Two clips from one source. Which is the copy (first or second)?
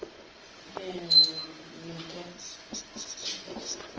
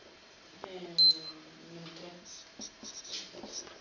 first